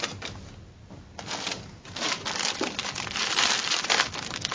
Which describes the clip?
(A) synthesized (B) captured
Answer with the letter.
B